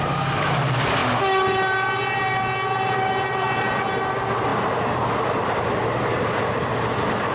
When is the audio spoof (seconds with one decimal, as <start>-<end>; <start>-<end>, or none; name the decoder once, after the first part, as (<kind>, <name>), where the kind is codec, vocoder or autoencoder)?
none